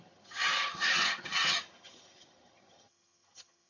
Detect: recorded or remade remade